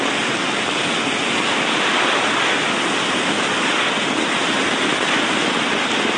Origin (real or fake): real